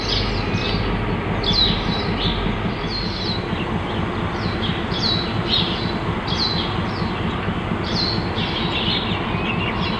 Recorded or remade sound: recorded